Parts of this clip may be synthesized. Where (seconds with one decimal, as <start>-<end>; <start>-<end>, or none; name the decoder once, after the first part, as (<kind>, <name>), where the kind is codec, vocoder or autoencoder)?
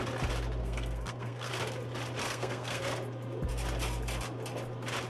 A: 0.6-1.5 (codec, SNAC); 2.2-2.8